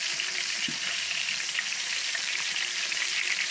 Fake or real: fake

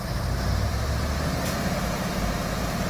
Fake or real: fake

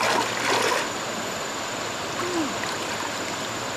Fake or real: real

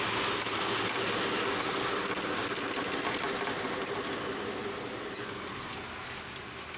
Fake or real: real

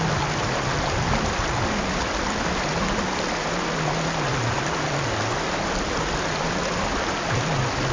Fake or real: real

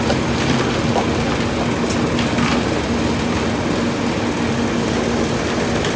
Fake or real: real